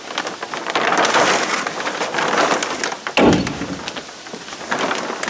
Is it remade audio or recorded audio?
recorded